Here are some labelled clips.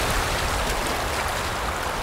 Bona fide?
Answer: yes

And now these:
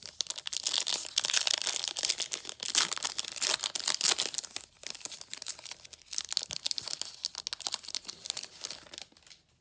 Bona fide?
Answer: yes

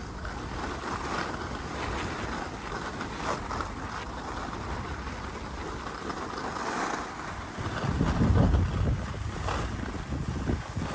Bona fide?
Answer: yes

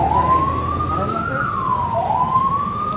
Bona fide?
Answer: yes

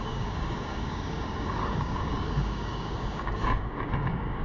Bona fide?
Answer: no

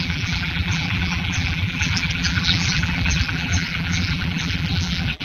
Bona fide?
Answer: no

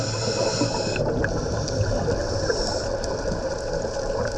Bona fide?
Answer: yes